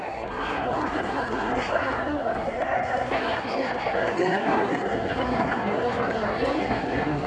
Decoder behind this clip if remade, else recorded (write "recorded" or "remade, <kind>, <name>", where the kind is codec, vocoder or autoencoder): remade, codec, SNAC